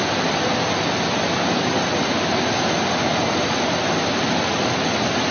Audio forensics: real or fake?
real